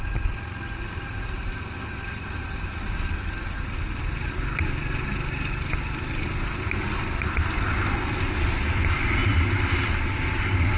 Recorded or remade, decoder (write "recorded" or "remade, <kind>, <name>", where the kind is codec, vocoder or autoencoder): recorded